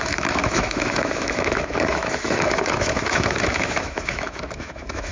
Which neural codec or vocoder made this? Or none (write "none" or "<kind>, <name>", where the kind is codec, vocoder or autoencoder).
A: autoencoder, DAC-VAE